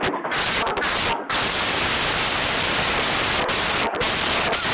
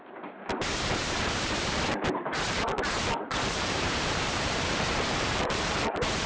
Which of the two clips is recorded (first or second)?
first